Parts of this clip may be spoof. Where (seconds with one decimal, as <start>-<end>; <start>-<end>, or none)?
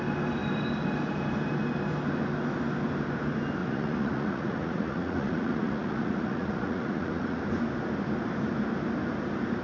3.6-7.4